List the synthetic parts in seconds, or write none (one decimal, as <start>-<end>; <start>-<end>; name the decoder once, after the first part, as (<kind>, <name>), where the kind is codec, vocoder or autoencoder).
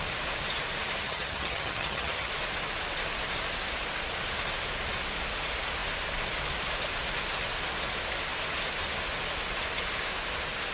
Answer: 1.0-2.3 (vocoder, HiFi-GAN)